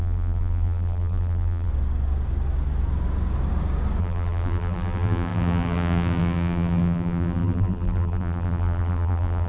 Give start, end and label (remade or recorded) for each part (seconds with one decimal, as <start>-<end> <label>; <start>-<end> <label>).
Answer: 0.0-1.7 remade; 1.7-4.0 recorded; 4.0-9.5 remade